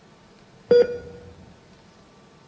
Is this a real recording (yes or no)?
yes